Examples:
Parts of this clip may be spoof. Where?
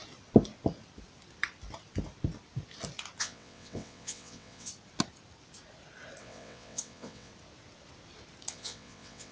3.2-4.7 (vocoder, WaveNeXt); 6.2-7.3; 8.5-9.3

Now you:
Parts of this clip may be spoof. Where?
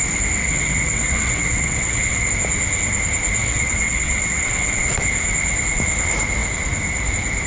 0.4-2.3 (vocoder, WaveNeXt); 3.4-5.0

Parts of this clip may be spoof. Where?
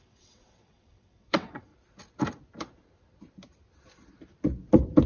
0.0-1.7 (vocoder, WaveNeXt)